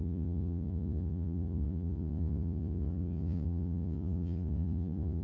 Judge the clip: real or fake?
fake